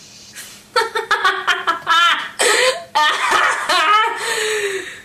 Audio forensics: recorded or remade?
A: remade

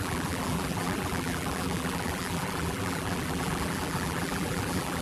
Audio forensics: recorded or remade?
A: remade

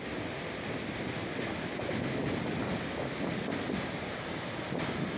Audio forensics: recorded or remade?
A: recorded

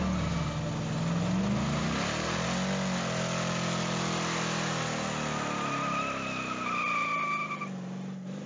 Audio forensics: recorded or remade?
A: recorded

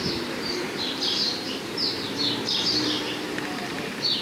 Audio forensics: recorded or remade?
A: remade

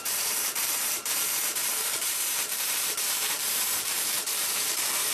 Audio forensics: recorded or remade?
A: remade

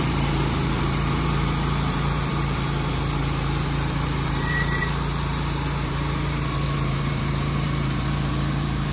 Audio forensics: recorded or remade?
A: remade